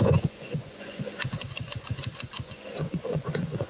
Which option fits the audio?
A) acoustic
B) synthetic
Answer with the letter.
B